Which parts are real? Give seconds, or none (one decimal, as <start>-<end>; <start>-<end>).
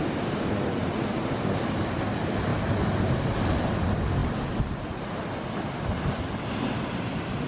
0.0-7.5